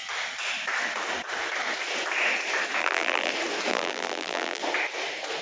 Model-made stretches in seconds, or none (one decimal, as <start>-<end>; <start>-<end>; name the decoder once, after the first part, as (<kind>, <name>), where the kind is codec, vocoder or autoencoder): 2.8-3.3 (vocoder, BigVGAN v2); 3.7-4.6